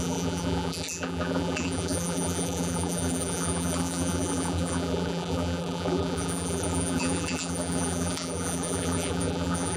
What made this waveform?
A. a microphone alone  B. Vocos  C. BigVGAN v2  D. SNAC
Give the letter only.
C